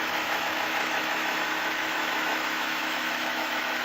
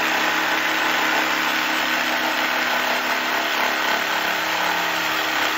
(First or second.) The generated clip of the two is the first